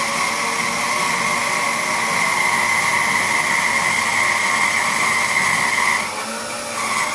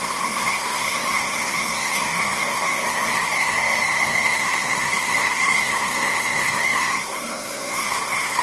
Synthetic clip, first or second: second